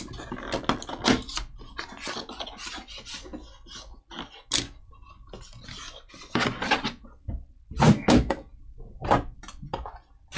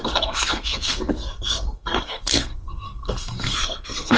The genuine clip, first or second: first